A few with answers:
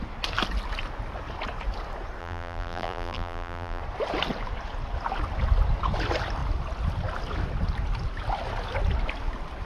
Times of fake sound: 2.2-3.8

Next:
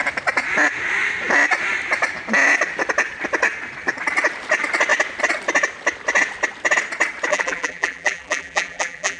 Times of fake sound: 7.3-9.2

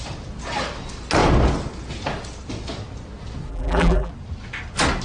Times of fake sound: 3.5-4.1

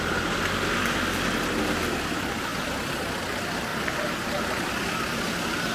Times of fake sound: 3.7-4.7